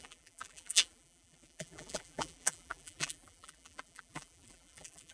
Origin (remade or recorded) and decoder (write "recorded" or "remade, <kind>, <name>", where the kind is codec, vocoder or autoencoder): remade, vocoder, BigVGAN v2